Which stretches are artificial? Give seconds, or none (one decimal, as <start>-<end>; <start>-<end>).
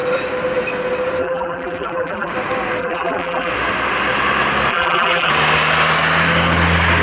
1.2-2.3; 2.8-3.5; 4.7-5.3